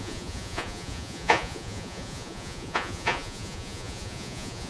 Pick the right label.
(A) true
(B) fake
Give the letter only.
B